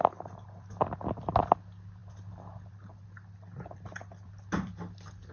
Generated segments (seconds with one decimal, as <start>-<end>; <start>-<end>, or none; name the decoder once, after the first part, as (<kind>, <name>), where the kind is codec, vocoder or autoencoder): none